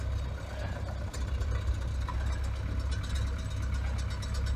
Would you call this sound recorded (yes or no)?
yes